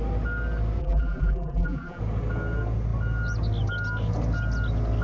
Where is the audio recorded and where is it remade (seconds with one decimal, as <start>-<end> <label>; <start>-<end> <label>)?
0.0-0.8 recorded; 0.8-2.0 remade; 2.0-5.0 recorded